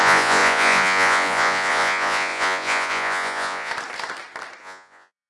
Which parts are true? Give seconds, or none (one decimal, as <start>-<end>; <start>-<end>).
3.7-4.6